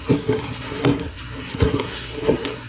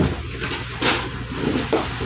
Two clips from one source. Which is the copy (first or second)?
first